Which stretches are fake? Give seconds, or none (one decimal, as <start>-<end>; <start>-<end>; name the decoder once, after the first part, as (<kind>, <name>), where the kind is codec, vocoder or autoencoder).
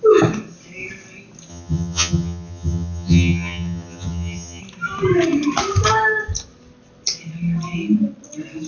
1.5-4.6 (vocoder, HiFi-GAN)